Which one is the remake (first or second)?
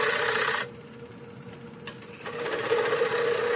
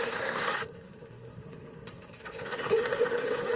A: second